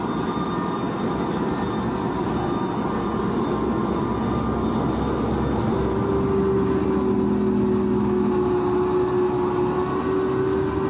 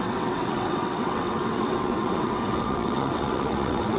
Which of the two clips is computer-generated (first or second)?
second